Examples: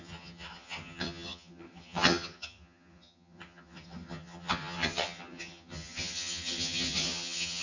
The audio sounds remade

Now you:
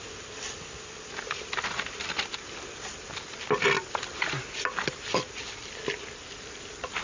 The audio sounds recorded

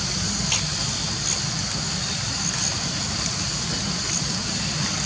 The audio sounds recorded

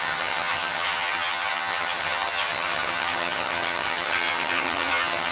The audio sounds remade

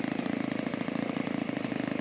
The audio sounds recorded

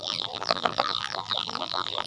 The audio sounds remade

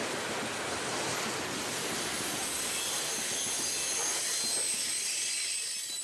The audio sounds recorded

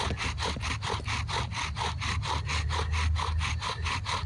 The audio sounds recorded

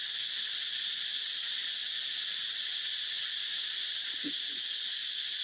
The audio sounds recorded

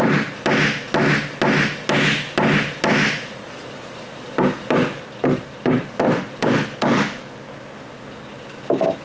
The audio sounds recorded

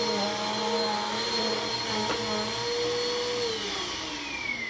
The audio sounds recorded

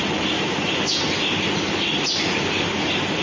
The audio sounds recorded